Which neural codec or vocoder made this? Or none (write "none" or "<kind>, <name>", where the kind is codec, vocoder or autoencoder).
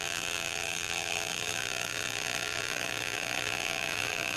vocoder, BigVGAN v2